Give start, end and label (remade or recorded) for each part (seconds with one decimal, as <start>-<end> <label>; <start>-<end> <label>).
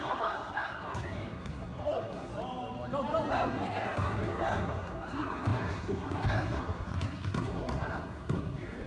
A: 0.0-2.3 remade; 2.3-3.3 recorded; 3.3-8.9 remade